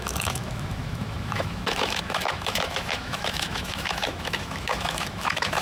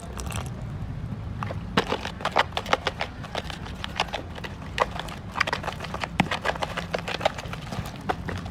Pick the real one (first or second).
second